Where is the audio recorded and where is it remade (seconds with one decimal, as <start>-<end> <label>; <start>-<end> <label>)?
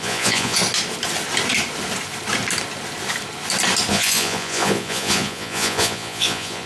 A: 0.0-0.6 remade; 0.6-3.9 recorded; 3.9-6.7 remade